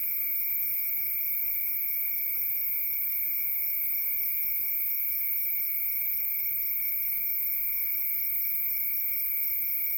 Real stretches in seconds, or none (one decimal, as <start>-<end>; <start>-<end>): 0.9-10.0